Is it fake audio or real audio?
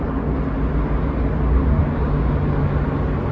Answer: real